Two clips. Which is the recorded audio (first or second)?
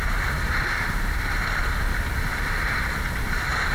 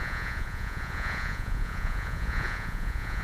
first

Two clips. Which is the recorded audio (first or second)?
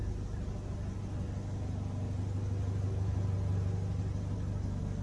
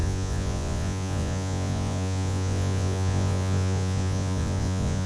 first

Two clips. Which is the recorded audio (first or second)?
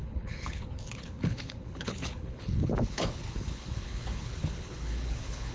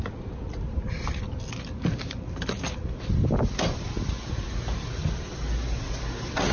second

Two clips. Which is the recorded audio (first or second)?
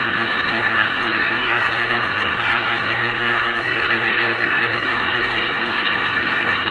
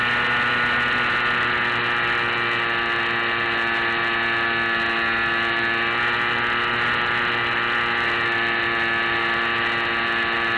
second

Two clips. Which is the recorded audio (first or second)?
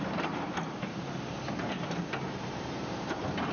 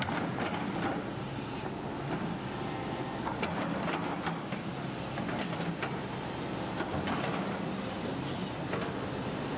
second